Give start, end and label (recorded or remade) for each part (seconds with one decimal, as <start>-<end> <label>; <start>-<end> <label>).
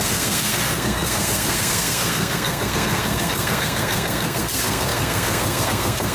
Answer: 0.0-6.1 remade